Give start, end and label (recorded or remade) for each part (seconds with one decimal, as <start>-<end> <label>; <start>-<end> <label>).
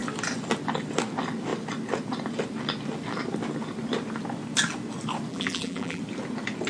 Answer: 0.0-5.3 recorded; 5.3-6.0 remade; 6.0-6.7 recorded